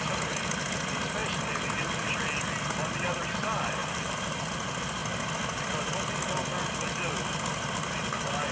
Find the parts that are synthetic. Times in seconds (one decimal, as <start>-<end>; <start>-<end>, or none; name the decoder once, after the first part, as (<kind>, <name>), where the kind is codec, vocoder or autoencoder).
3.8-4.4 (vocoder, BigVGAN v2)